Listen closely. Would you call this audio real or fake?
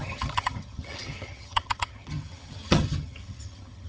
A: fake